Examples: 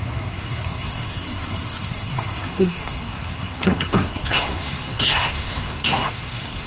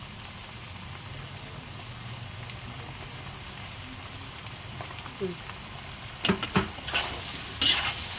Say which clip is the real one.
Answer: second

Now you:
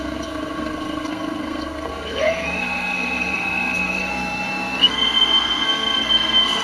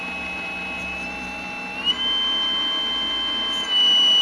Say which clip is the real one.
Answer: second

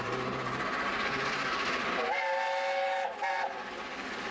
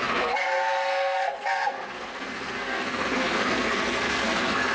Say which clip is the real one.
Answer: first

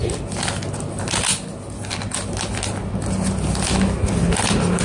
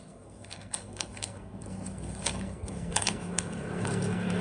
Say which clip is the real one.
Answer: first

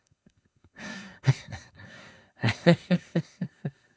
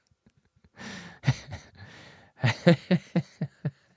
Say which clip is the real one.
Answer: second